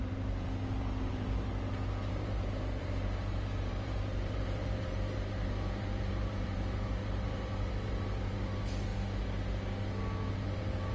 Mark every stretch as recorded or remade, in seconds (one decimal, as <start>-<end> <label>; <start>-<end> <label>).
0.0-1.5 remade; 1.5-2.1 recorded; 2.1-8.9 remade; 8.9-10.3 recorded; 10.3-10.9 remade